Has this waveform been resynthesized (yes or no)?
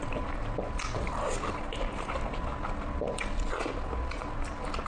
no